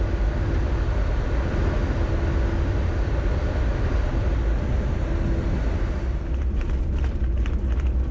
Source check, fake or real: real